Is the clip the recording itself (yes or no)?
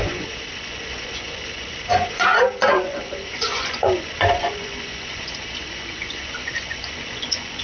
no